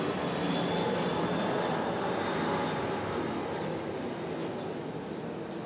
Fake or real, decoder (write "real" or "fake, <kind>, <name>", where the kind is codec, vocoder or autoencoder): real